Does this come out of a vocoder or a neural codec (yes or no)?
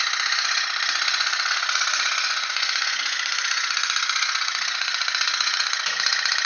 yes